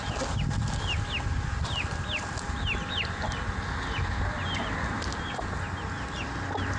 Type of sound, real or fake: real